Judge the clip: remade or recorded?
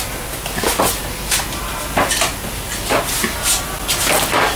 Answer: recorded